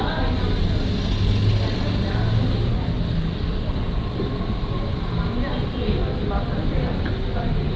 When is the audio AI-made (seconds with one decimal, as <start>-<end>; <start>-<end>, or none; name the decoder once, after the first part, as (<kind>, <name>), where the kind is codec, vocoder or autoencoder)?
none